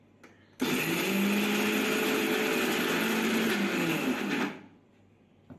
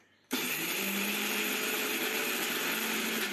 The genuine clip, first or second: first